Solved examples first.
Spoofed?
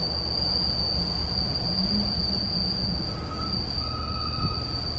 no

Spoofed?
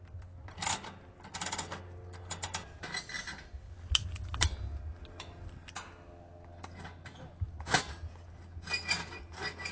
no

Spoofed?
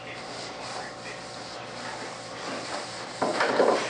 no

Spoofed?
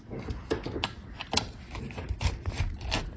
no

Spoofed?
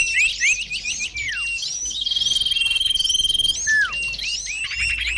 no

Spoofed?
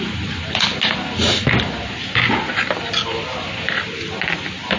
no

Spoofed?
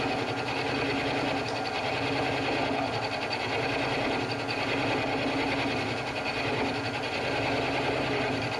no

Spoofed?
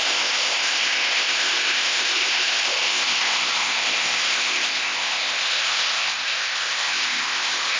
yes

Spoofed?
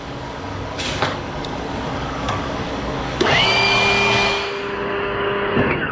yes